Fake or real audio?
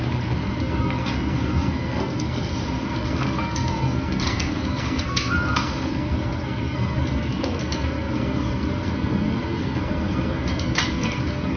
fake